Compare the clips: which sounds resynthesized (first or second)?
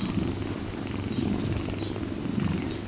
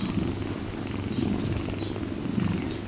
first